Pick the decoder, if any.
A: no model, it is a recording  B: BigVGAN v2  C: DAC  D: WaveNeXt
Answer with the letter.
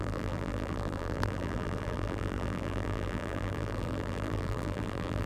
B